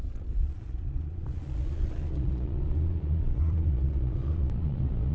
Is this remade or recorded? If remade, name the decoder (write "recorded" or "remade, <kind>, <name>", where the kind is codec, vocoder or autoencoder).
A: remade, vocoder, Vocos